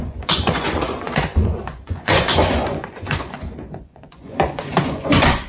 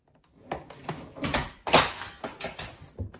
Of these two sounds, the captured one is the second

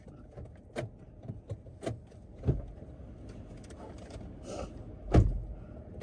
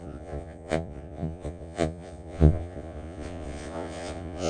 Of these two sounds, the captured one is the first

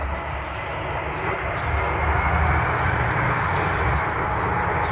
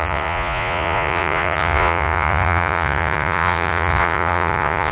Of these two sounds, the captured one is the first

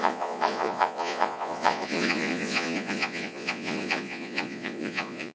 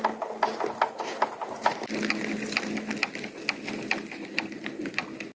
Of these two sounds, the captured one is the second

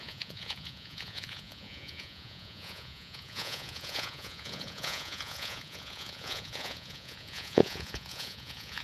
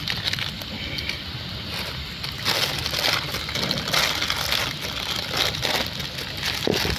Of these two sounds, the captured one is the second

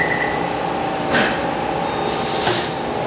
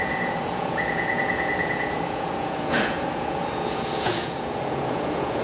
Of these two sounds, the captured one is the first